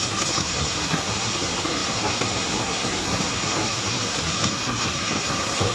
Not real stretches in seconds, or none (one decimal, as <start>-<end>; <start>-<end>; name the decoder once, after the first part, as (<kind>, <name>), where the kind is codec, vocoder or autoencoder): 0.0-5.7 (codec, SNAC)